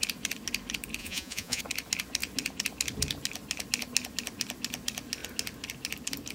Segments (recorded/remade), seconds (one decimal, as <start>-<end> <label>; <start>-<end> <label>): 0.0-1.0 recorded; 1.0-1.6 remade; 1.6-6.3 recorded